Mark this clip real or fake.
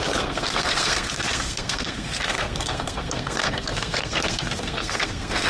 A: fake